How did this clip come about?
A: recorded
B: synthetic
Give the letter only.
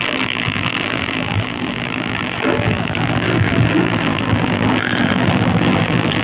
B